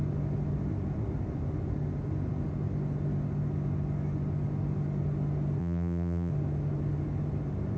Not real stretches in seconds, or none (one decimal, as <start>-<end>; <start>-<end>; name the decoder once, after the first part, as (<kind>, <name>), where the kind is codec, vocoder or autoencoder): 5.6-6.3 (vocoder, BigVGAN v2)